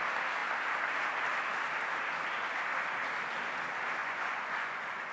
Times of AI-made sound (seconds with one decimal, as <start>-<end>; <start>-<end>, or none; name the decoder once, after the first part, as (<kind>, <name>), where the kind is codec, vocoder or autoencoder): 4.0-5.1 (vocoder, Vocos)